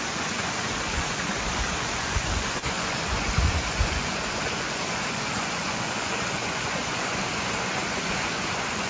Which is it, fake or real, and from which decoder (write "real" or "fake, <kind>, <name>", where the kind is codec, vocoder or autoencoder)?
fake, vocoder, Vocos